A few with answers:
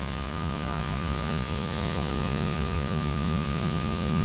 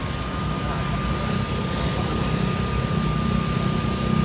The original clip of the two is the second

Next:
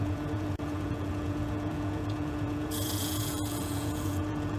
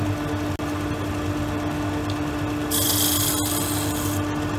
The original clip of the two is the second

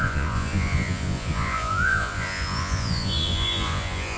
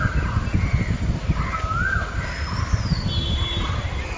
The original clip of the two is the second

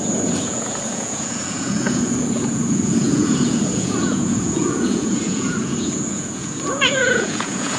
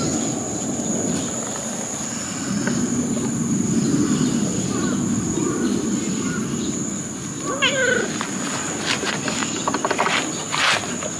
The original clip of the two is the second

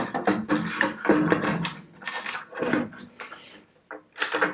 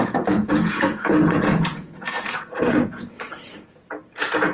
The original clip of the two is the first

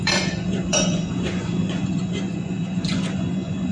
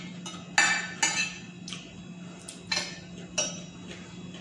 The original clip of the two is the second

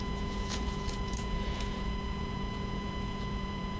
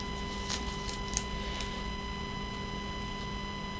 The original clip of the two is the second